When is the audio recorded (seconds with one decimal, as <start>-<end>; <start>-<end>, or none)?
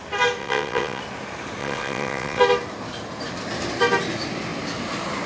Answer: 0.0-0.4; 1.0-1.6; 2.4-5.3